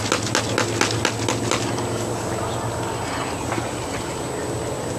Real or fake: real